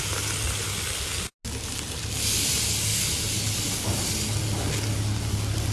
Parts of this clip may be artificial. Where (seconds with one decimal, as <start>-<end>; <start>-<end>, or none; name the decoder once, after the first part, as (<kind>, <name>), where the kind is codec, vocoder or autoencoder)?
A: none